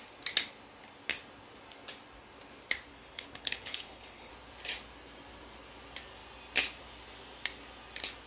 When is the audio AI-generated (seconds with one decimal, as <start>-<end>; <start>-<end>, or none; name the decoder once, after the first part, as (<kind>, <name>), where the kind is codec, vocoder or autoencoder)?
2.9-4.3 (codec, HILCodec)